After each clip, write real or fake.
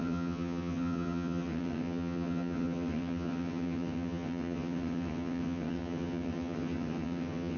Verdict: fake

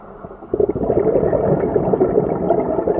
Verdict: real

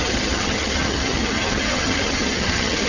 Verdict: fake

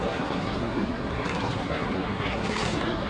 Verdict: fake